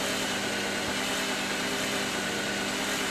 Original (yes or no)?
yes